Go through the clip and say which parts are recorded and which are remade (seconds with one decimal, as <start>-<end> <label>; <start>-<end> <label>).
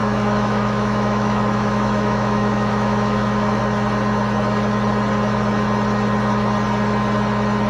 0.0-3.6 remade; 3.6-7.7 recorded